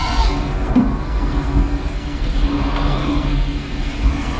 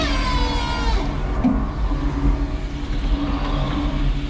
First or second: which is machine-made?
first